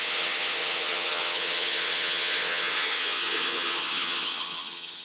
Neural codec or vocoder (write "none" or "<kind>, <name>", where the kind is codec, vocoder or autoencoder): vocoder, HiFi-GAN